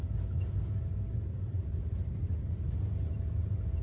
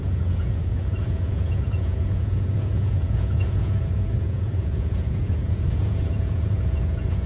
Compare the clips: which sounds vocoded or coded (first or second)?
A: second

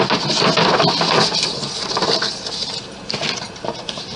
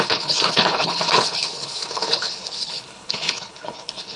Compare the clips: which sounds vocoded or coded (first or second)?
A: second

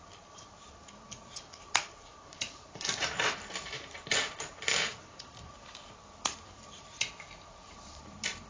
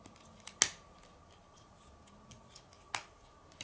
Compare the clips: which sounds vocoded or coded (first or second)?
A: first